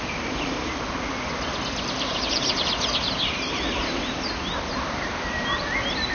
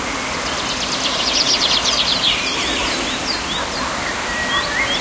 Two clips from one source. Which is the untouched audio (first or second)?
second